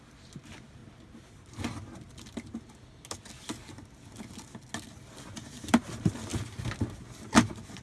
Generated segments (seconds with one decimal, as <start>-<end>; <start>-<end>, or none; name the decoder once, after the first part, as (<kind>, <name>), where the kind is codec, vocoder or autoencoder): 0.0-0.8 (vocoder, BigVGAN v2); 5.5-6.3; 7.3-7.8